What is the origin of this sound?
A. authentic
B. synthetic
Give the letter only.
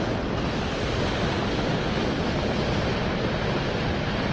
A